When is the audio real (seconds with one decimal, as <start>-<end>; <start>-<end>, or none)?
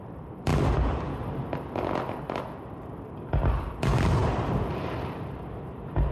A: 0.5-3.4